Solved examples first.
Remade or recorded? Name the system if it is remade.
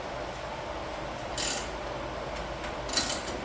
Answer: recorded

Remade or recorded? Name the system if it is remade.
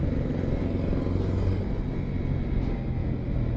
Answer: recorded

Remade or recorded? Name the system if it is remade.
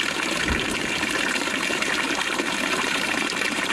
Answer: remade, vocoder, BigVGAN v2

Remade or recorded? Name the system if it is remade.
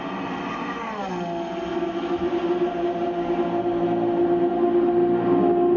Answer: recorded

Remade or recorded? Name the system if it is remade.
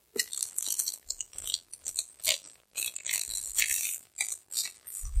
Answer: remade, vocoder, BigVGAN v2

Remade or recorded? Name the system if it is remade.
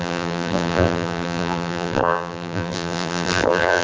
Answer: remade, vocoder, BigVGAN v2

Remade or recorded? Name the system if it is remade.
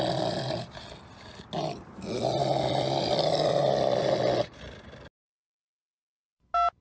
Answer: recorded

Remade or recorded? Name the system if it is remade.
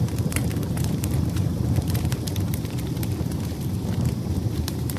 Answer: remade, vocoder, BigVGAN v2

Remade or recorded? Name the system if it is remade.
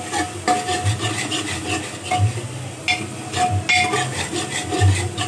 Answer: recorded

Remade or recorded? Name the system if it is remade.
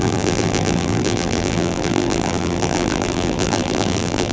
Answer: remade, vocoder, BigVGAN v2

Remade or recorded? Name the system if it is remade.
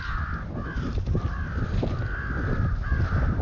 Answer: remade, vocoder, BigVGAN v2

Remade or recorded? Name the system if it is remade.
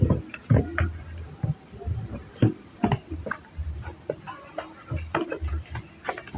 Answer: recorded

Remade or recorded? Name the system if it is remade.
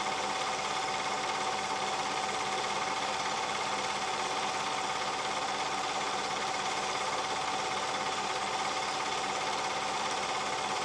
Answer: remade, vocoder, BigVGAN v2